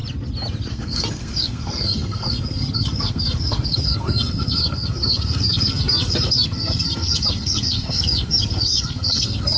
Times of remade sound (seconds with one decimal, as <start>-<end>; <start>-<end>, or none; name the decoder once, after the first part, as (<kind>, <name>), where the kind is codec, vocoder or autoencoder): 0.7-9.6 (codec, SNAC)